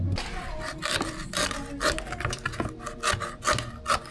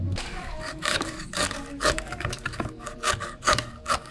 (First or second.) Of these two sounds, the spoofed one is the second